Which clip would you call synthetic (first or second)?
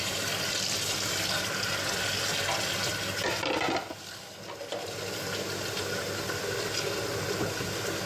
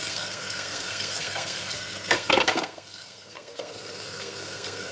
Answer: second